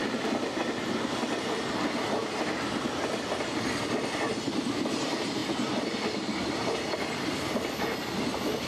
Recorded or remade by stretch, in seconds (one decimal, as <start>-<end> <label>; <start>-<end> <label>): 0.0-8.7 recorded